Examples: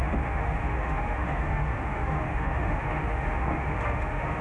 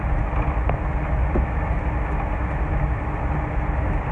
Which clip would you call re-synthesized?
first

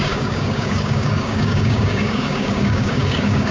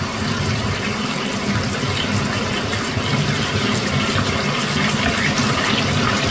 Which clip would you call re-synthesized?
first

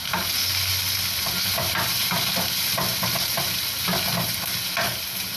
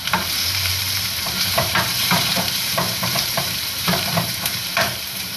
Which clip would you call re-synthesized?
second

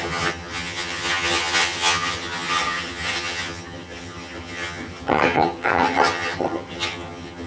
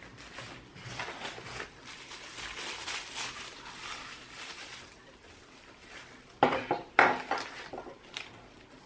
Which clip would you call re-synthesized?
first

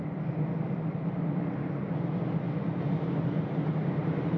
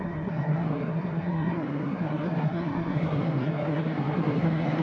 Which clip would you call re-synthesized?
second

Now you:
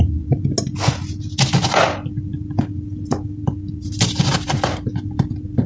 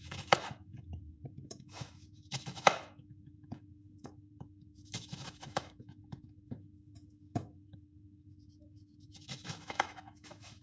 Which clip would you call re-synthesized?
second